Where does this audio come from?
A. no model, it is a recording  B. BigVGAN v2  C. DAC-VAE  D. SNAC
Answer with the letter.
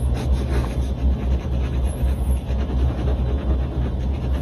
A